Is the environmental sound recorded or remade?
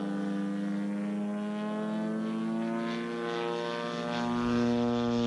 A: recorded